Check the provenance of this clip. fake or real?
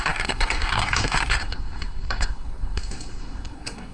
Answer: fake